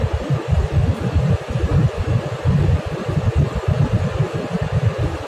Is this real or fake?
real